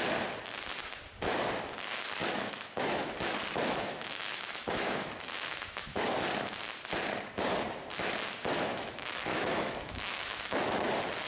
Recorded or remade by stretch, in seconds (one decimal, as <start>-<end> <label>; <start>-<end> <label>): 0.0-2.2 recorded; 2.2-6.0 remade; 6.0-8.7 recorded; 8.7-10.9 remade; 10.9-11.3 recorded